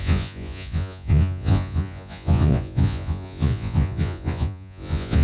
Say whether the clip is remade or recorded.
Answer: remade